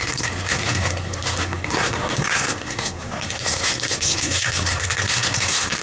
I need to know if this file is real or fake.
fake